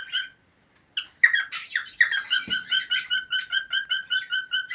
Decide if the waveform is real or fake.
real